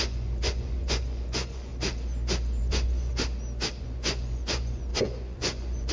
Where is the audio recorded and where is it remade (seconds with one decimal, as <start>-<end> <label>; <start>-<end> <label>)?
0.0-1.7 remade; 1.7-2.6 recorded; 2.6-3.1 remade; 3.1-3.8 recorded; 3.8-5.9 remade